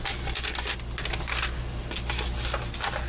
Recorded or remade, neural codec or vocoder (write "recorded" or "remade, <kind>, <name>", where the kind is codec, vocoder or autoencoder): recorded